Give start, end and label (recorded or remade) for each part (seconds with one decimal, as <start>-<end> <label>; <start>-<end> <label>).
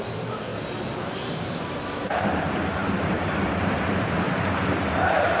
0.0-0.5 remade; 0.5-1.4 recorded; 1.4-5.4 remade